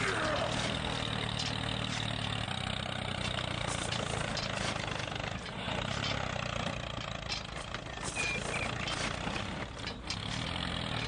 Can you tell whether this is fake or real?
real